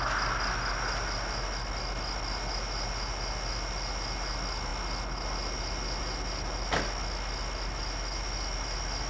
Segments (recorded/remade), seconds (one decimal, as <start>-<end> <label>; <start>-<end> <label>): 0.0-9.1 recorded